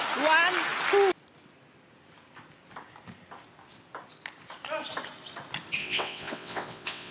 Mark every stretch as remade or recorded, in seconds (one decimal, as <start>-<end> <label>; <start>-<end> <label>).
0.0-5.8 recorded; 5.8-7.1 remade